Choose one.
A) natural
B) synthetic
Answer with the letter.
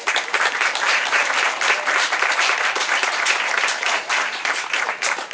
B